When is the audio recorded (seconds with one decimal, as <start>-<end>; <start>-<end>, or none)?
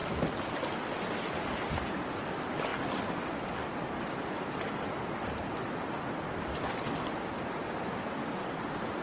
0.0-9.0